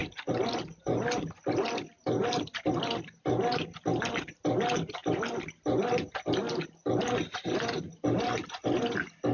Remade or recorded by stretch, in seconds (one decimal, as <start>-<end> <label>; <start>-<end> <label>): 0.0-2.4 remade; 2.4-5.0 recorded; 5.0-7.0 remade; 7.0-9.3 recorded